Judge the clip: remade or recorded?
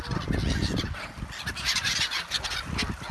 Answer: recorded